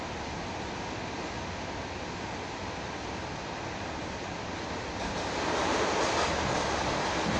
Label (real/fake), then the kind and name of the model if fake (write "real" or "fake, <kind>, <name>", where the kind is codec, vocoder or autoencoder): real